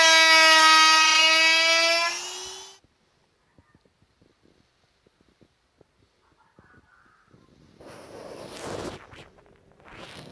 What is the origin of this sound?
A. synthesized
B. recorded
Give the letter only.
B